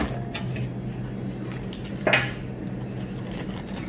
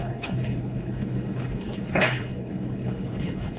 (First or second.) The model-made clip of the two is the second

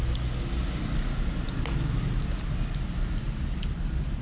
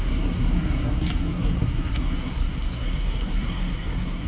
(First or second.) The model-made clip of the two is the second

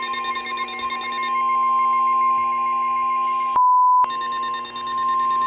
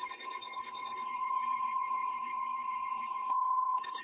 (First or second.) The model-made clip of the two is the second